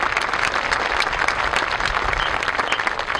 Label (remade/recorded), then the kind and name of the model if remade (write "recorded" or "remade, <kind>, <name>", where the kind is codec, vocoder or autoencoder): recorded